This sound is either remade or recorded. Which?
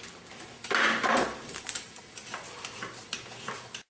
recorded